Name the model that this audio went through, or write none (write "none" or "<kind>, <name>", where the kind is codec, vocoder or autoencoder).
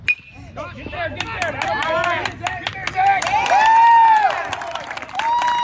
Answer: none